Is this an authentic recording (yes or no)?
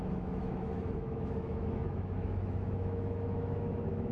no